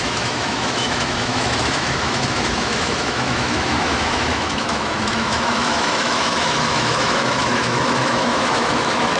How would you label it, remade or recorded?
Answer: remade